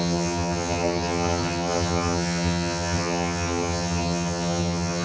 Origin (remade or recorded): remade